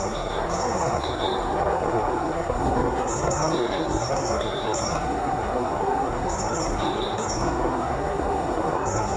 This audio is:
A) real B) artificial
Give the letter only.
B